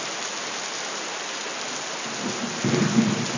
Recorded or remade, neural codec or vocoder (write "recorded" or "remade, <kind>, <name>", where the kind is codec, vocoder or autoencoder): recorded